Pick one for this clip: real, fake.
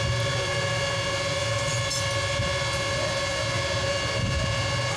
real